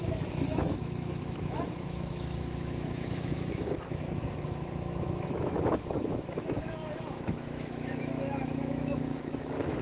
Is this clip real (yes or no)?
no